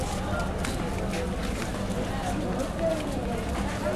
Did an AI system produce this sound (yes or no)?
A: no